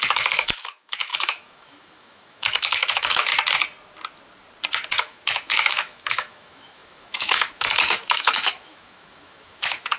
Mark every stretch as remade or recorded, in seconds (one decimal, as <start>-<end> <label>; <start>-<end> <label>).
0.0-3.3 remade; 3.3-5.0 recorded; 5.0-10.0 remade